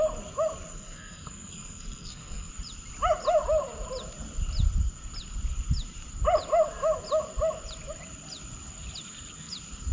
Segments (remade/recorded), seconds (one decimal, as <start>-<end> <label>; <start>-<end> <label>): 0.0-0.7 recorded; 0.7-2.5 remade; 2.5-9.9 recorded